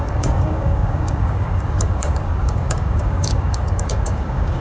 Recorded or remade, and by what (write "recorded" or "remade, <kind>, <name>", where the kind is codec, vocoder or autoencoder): remade, codec, DAC